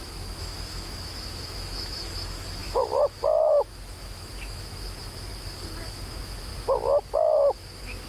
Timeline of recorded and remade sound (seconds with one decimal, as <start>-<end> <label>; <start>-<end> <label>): 0.0-5.3 remade; 5.3-5.8 recorded; 5.8-6.5 remade; 6.5-7.1 recorded; 7.1-8.1 remade